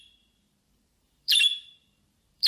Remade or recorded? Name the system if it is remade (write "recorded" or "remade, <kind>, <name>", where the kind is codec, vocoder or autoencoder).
remade, vocoder, BigVGAN v2